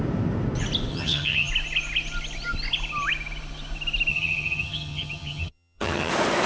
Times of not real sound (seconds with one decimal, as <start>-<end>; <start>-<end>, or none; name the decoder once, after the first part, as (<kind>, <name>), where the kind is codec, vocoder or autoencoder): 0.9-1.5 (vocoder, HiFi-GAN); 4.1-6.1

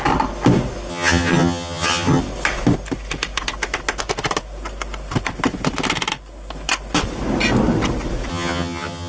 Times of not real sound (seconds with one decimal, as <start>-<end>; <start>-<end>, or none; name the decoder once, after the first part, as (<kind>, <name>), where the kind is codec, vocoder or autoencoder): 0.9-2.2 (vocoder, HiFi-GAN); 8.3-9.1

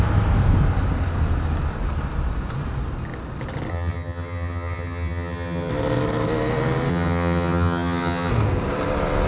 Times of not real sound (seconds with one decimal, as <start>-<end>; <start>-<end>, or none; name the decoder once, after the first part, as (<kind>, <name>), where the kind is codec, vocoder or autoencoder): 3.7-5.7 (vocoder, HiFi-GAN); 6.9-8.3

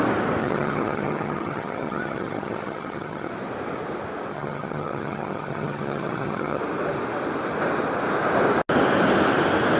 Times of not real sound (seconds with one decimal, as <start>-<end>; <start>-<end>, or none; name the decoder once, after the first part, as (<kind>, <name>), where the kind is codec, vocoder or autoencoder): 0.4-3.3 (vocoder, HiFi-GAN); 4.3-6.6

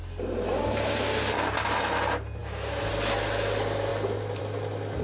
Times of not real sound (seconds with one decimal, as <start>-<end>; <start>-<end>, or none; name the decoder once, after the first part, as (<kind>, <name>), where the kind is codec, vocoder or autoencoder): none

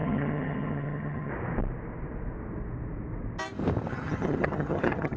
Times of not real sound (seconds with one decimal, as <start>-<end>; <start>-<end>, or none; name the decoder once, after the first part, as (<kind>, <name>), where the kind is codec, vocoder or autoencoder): 0.0-1.3 (vocoder, HiFi-GAN); 3.9-5.2